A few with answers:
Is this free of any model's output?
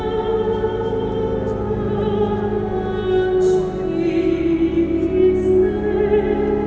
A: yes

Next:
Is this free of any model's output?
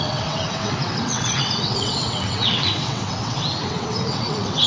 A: no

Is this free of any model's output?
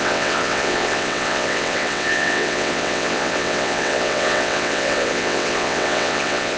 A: no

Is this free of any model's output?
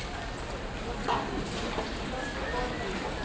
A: yes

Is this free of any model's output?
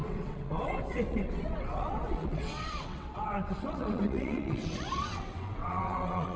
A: no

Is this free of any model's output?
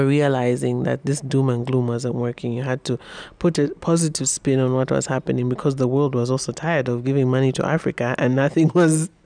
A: yes